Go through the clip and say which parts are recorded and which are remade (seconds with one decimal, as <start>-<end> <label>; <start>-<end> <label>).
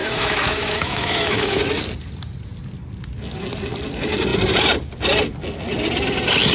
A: 0.0-1.6 remade; 1.6-6.5 recorded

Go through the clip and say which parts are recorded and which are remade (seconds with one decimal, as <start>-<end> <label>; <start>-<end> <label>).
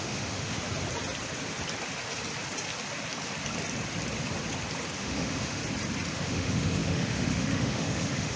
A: 0.0-0.6 remade; 0.6-5.0 recorded; 5.0-5.6 remade; 5.6-6.1 recorded; 6.1-8.4 remade